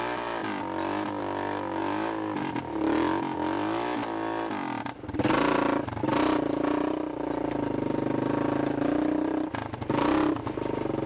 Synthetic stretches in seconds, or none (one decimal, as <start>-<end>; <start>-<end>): none